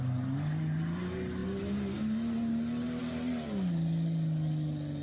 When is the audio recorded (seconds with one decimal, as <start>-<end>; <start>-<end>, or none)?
0.0-5.0